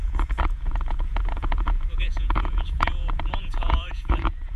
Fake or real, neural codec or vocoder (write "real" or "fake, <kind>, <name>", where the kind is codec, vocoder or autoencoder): fake, vocoder, Vocos